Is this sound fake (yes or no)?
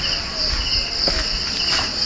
no